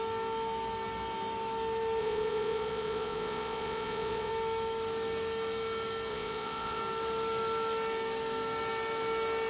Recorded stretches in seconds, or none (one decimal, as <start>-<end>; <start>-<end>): 0.0-2.0; 4.3-6.1; 6.8-9.5